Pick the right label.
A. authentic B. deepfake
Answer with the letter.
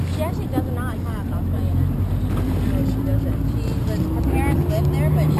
A